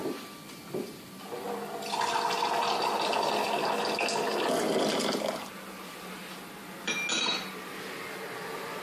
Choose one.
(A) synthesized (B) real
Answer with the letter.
B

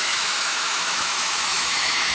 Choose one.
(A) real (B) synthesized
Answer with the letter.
B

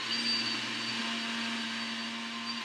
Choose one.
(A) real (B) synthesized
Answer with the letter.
A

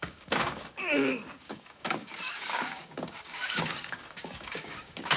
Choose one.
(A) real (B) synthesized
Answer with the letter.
B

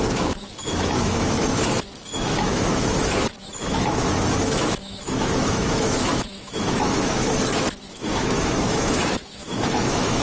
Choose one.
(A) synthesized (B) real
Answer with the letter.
A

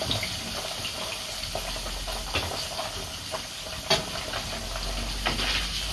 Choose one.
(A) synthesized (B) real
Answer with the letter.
B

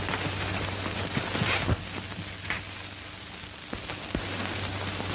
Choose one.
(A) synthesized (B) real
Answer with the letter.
B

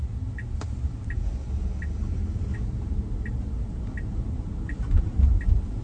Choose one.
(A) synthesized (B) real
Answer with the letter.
B